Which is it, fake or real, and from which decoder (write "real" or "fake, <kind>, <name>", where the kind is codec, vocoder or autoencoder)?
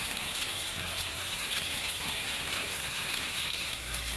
fake, codec, SNAC